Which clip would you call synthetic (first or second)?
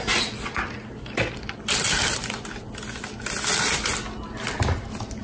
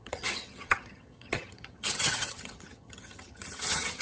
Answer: second